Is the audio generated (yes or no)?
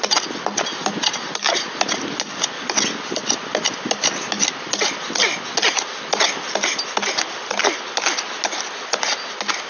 no